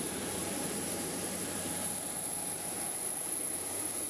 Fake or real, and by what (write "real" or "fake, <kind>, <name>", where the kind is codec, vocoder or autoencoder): fake, vocoder, BigVGAN v2